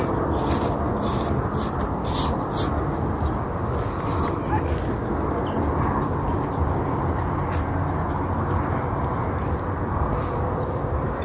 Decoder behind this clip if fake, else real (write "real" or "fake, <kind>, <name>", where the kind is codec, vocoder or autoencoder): real